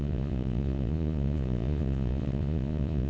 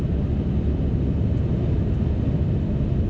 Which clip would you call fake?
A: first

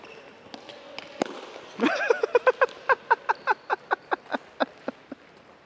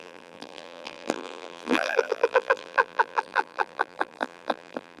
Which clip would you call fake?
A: second